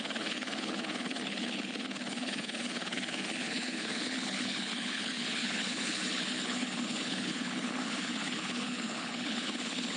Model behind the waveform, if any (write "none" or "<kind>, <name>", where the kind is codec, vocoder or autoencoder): codec, HILCodec